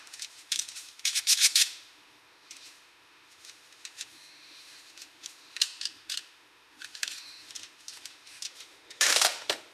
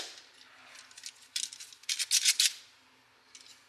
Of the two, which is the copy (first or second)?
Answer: first